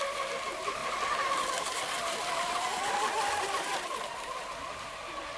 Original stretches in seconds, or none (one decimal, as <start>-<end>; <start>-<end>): 0.0-5.4